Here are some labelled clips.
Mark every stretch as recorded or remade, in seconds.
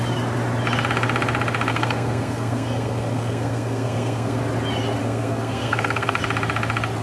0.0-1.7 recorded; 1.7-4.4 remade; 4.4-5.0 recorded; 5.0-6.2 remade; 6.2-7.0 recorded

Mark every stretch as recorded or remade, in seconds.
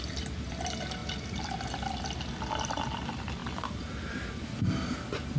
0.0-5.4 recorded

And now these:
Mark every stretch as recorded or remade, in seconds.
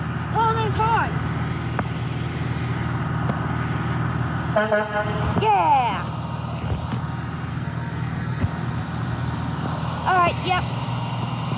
0.0-7.5 recorded; 7.5-8.4 remade; 8.4-11.6 recorded